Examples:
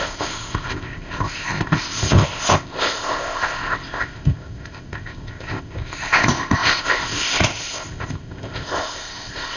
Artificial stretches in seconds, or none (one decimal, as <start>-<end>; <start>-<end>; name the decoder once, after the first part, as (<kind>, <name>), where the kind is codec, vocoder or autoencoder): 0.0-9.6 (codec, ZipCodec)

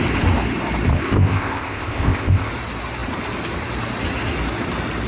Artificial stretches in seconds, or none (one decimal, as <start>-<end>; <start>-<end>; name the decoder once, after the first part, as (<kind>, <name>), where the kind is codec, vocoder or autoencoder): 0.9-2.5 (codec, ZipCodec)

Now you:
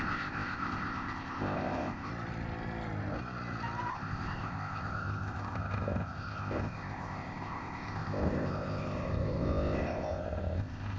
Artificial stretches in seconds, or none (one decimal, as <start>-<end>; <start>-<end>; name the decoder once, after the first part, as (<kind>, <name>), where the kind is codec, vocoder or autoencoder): 0.0-2.1 (codec, ZipCodec); 3.9-11.0